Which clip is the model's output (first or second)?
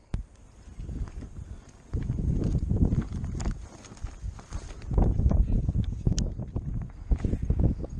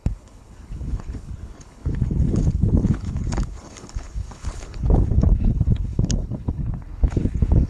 second